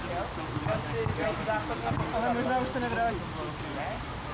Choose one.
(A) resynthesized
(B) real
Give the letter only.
B